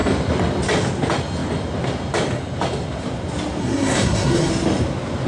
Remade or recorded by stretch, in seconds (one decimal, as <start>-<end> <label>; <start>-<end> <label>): 0.0-3.6 recorded; 3.6-4.5 remade; 4.5-5.3 recorded